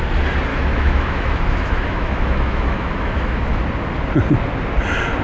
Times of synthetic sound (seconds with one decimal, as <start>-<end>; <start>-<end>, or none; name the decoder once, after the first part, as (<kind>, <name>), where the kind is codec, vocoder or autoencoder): 0.5-3.6 (autoencoder, DAC-VAE)